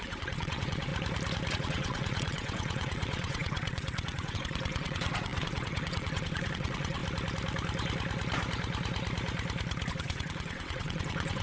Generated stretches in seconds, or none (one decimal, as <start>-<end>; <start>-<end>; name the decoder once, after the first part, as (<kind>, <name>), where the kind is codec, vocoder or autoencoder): 0.0-0.9 (vocoder, WaveNeXt); 1.5-7.0; 9.9-11.4